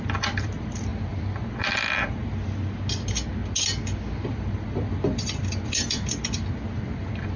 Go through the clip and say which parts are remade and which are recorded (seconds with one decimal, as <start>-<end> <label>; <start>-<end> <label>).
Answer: 0.0-2.2 remade; 2.2-4.3 recorded; 4.3-7.4 remade